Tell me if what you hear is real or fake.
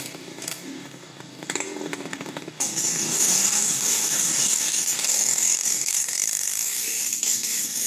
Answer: fake